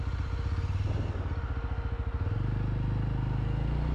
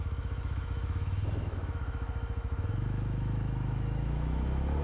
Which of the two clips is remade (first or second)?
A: second